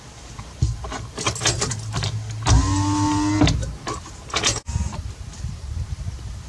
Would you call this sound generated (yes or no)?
no